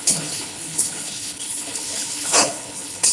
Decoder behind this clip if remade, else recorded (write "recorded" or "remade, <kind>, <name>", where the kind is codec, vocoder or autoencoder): remade, codec, HILCodec